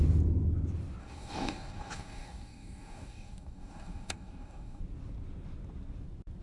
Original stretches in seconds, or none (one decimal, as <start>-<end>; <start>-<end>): 0.0-1.0; 4.8-6.4